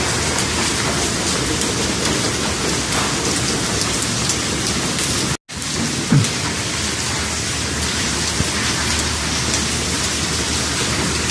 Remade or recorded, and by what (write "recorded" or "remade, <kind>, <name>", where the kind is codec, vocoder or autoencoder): recorded